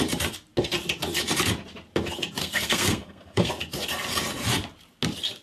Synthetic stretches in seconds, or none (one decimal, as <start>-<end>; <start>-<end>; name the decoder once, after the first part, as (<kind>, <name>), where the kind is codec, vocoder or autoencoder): 2.4-3.5 (codec, SNAC)